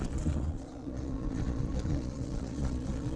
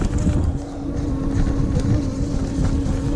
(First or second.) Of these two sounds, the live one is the second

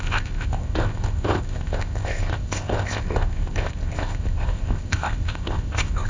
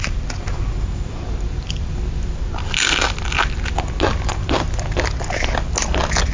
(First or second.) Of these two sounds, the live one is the second